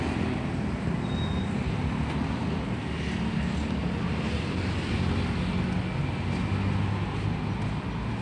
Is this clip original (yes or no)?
yes